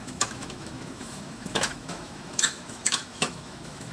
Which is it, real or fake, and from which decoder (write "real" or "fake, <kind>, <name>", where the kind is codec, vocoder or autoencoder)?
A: fake, autoencoder, DAC-VAE